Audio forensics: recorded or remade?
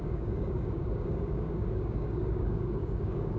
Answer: remade